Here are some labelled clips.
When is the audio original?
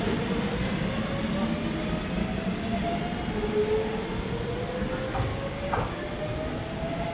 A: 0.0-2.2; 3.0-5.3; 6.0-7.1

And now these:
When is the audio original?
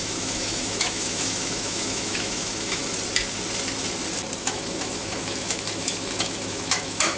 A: 2.8-4.4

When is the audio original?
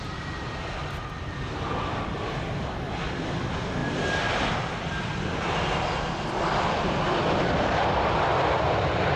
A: 0.0-9.2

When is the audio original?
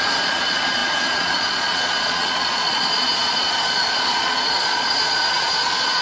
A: none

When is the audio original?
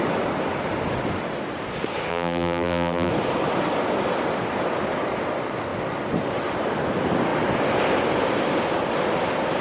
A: 0.0-2.1; 3.1-9.6